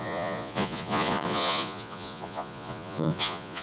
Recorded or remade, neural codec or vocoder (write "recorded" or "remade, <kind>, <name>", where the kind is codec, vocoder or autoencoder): remade, vocoder, Vocos